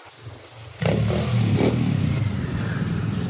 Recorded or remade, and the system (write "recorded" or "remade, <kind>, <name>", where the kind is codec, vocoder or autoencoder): recorded